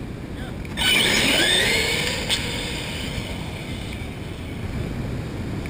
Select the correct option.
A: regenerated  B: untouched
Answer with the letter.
B